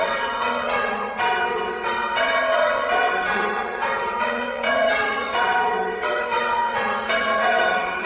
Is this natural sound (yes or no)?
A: no